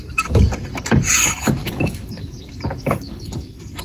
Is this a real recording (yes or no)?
no